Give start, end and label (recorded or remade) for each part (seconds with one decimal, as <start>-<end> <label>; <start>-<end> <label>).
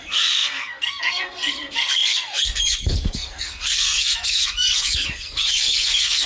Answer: 0.0-6.3 remade